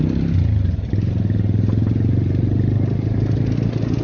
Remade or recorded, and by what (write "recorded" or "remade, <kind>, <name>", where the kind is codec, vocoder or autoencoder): recorded